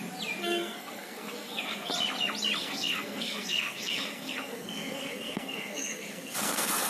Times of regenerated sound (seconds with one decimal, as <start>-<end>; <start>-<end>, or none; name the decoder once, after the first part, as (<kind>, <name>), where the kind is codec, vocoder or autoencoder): 0.4-1.9 (codec, SNAC); 2.6-6.9